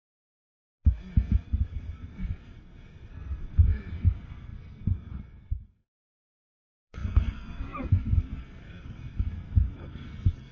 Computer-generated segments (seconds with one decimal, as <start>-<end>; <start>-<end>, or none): 0.0-0.5; 1.0-10.5

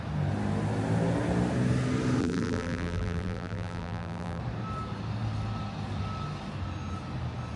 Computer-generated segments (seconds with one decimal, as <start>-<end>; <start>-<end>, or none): 2.2-4.4